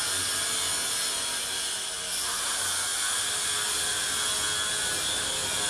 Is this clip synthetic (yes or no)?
no